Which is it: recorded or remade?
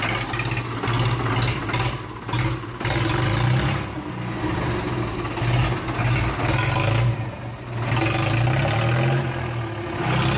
recorded